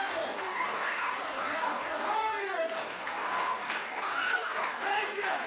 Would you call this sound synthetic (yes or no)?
yes